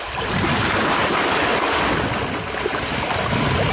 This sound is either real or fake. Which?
real